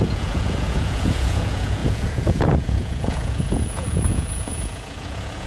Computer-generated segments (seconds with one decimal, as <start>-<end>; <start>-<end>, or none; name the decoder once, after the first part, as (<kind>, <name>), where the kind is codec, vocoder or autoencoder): 0.0-5.5 (vocoder, Vocos)